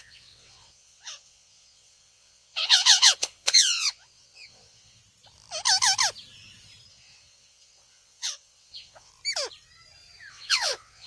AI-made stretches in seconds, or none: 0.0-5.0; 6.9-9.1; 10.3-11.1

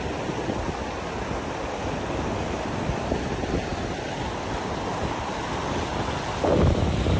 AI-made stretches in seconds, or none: none

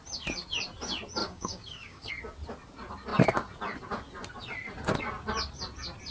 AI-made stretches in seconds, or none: 1.2-2.1

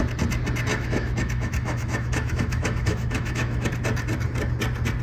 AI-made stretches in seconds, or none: 0.7-3.7

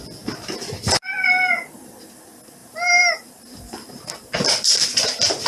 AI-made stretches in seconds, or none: 2.6-4.1

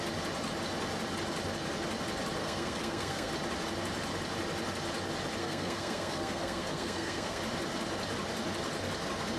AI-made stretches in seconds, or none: 2.4-3.3; 5.4-7.4

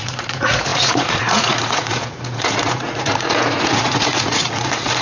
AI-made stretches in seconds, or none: 0.0-5.0